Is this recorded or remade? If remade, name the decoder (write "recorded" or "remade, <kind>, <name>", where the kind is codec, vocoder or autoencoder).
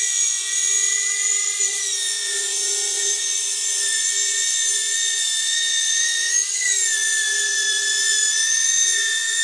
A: remade, vocoder, Vocos